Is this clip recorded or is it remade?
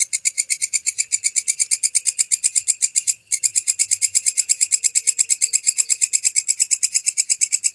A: recorded